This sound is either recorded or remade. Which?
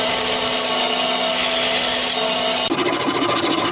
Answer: recorded